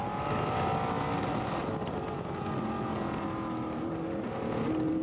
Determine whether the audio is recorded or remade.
recorded